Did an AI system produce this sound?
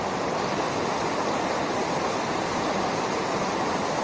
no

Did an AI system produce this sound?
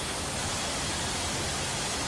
no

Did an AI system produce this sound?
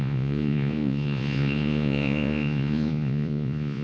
yes